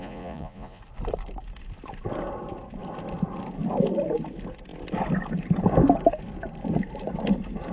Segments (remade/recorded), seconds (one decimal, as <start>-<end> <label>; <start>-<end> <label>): 0.0-0.8 remade; 0.8-7.7 recorded